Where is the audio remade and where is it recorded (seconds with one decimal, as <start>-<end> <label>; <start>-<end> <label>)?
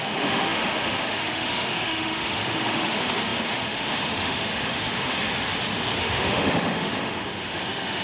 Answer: 0.0-5.3 remade; 5.3-6.0 recorded; 6.0-8.0 remade